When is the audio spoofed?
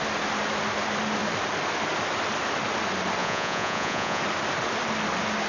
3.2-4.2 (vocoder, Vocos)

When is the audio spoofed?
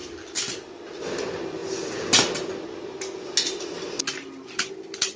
none